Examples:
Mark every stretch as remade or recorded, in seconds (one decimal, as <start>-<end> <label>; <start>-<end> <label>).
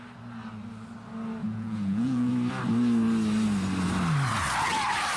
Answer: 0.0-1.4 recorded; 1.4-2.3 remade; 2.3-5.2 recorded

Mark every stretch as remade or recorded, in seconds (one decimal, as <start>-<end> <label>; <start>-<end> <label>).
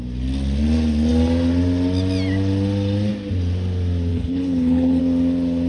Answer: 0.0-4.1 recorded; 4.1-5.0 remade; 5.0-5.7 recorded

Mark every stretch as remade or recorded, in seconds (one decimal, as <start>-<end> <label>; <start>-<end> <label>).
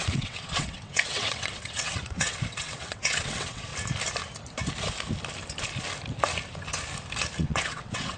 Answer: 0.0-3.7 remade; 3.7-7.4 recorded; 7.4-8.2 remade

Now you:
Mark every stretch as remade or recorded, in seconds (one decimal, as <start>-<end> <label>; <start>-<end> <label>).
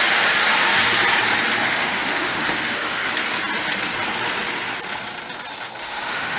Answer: 0.0-1.6 recorded; 1.6-3.1 remade; 3.1-5.8 recorded; 5.8-6.4 remade